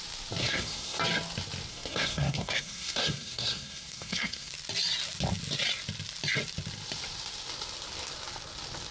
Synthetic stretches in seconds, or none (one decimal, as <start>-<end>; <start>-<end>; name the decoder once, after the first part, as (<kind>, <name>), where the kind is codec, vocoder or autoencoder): 0.4-1.0 (codec, SNAC); 1.7-4.5